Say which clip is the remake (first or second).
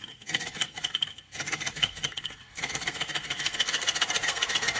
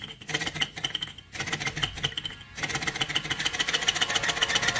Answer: first